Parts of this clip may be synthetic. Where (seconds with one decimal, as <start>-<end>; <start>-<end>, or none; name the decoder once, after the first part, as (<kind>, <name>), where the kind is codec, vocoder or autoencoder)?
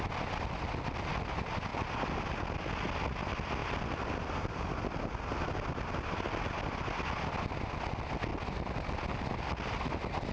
none